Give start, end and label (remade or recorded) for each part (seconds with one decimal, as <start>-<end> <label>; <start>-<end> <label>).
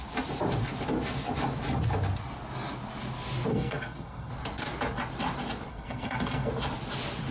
0.0-3.5 recorded; 3.5-4.3 remade; 4.3-5.7 recorded; 5.7-6.5 remade; 6.5-7.3 recorded